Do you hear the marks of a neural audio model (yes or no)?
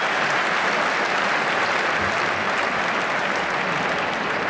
no